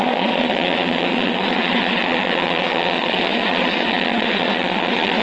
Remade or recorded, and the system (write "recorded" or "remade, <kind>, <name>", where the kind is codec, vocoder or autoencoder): remade, vocoder, Vocos